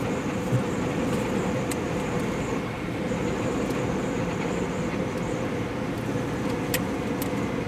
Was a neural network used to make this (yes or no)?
no